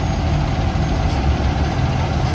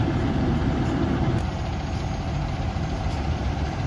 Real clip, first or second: first